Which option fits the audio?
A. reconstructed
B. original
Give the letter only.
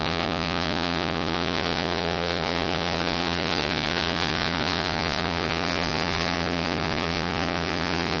A